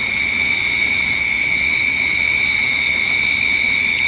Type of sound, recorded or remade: remade